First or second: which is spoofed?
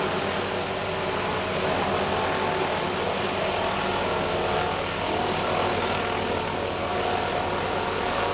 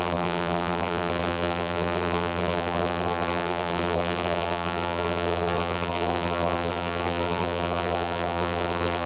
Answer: second